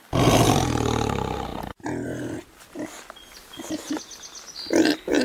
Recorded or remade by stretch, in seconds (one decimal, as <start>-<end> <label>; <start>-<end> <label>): 0.0-5.2 recorded